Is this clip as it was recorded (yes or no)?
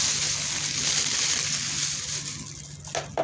yes